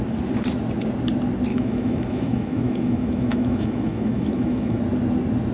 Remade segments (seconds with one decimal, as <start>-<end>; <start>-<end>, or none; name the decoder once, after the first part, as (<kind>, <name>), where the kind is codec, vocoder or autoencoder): 1.5-4.8 (autoencoder, DAC-VAE)